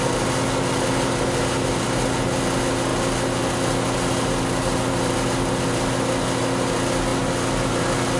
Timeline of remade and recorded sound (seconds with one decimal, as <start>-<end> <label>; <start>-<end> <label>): 0.0-8.2 recorded